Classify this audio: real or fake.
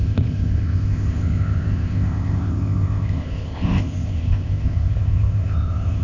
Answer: fake